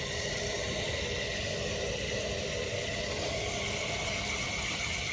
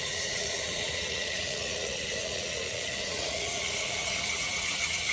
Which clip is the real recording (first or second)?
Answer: first